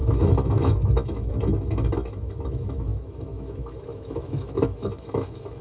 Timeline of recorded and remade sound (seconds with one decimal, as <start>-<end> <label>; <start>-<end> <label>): 0.0-5.6 remade